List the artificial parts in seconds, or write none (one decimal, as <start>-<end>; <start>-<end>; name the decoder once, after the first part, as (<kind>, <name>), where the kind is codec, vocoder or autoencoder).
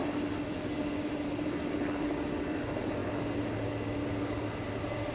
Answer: none